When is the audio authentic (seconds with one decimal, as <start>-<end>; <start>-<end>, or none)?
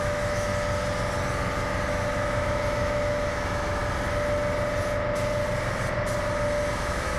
0.5-1.9; 3.8-6.7